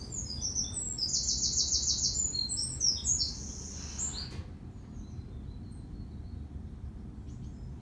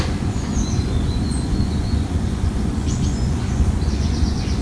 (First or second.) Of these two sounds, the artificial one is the second